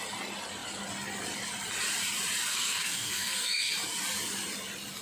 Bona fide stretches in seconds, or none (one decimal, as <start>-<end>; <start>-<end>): 0.0-2.5; 3.7-5.0